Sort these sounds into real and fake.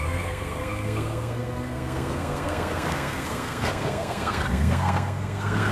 fake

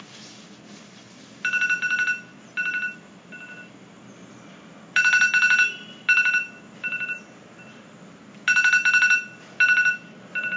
real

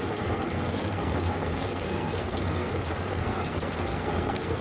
fake